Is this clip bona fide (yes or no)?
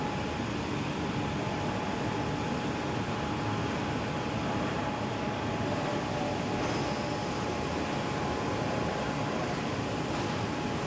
yes